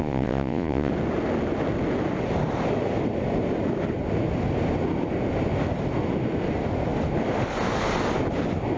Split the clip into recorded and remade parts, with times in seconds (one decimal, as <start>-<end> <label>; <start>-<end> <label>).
0.0-0.9 remade; 0.9-8.8 recorded